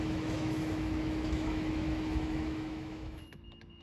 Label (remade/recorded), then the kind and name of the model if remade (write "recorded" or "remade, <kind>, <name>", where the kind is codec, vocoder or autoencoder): remade, autoencoder, DAC-VAE